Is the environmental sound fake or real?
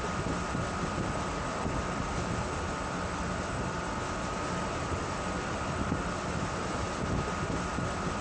real